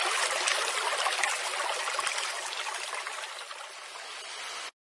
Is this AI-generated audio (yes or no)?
no